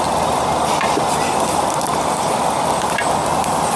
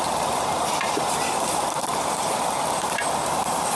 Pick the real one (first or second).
first